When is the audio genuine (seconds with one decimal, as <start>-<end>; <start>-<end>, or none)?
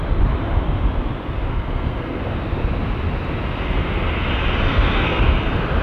0.0-1.5; 2.2-4.7; 5.2-5.8